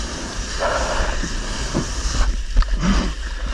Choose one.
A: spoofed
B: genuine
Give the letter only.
B